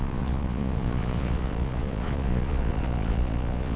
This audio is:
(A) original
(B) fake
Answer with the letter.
B